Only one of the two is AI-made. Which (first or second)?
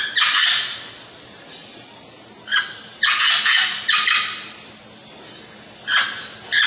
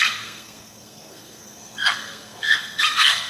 second